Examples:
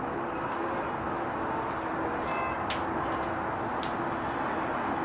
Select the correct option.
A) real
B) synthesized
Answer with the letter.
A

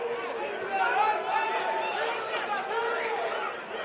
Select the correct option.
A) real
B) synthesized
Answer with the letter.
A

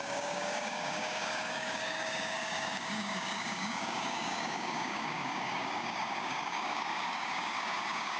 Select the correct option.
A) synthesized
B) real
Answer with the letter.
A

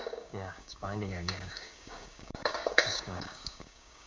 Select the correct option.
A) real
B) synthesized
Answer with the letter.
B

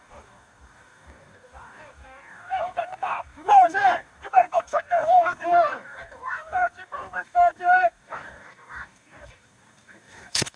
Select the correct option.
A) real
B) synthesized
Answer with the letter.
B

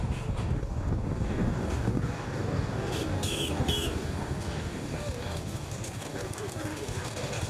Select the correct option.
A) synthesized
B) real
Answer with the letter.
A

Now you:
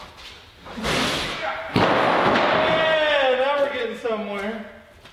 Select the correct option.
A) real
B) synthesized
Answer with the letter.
A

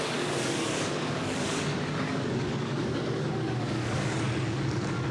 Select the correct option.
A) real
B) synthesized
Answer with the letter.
B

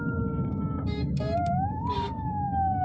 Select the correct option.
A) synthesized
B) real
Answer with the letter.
A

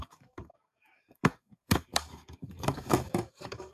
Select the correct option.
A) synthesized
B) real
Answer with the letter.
A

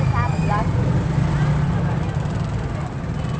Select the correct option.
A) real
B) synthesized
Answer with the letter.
A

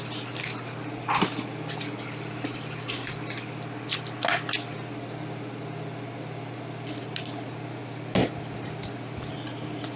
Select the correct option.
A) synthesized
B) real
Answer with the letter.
B